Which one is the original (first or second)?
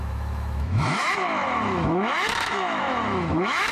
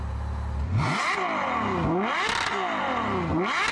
second